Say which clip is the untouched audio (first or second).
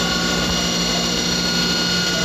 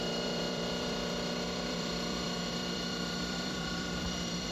first